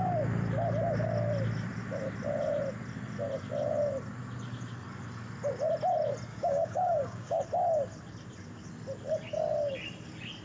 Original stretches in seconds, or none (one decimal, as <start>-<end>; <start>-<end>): 0.0-6.3; 7.4-10.4